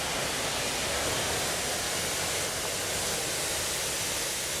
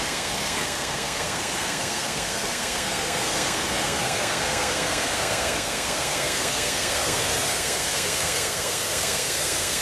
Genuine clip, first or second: first